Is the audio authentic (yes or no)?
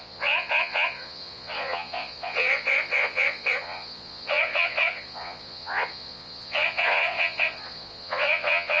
no